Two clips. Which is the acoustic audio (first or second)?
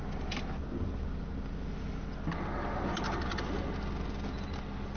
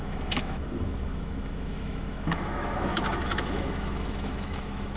first